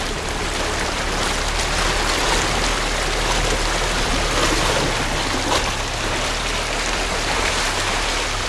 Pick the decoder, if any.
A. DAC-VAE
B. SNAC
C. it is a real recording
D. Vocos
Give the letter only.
C